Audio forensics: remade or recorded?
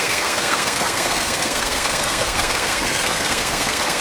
remade